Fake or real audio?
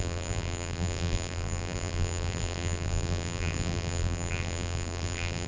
fake